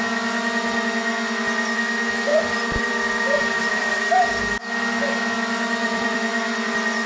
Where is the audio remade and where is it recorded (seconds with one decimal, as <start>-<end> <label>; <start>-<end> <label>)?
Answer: 0.0-2.3 recorded; 2.3-2.9 remade; 2.9-3.4 recorded; 3.4-4.3 remade; 4.3-5.8 recorded; 5.8-7.1 remade